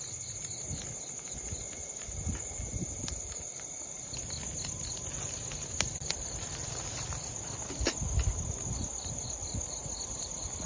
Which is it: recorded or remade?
recorded